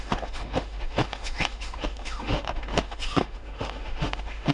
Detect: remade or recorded remade